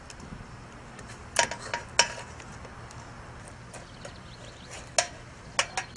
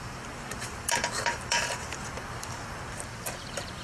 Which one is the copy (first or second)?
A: second